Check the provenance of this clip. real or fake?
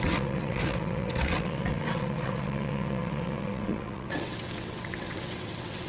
fake